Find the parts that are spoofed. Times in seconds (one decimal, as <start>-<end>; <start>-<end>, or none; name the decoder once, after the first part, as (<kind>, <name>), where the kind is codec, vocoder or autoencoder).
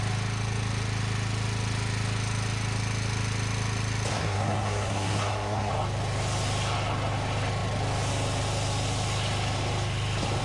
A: 4.1-5.7 (codec, SNAC)